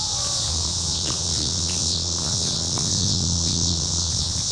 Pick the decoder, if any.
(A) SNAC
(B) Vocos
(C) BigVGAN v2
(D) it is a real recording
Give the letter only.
B